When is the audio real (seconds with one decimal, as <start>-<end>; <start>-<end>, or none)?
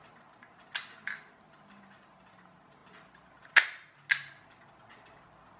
0.0-5.6